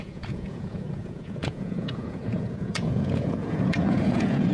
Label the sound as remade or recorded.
remade